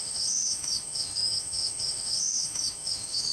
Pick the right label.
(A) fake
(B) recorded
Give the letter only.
A